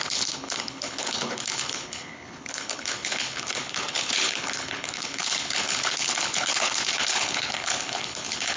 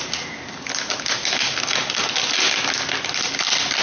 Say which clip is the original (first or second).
second